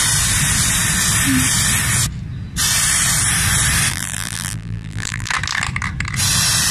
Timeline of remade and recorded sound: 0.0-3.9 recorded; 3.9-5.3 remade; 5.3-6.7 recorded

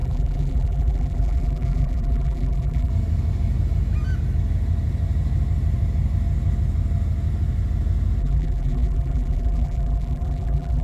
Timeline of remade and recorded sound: 0.0-2.9 remade; 2.9-8.2 recorded; 8.2-10.8 remade

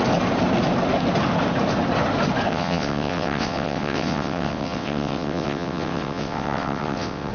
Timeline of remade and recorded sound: 0.0-2.5 recorded; 2.5-7.3 remade